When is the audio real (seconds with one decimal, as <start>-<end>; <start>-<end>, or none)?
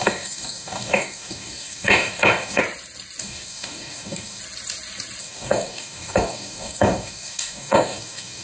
2.6-3.2; 4.4-5.2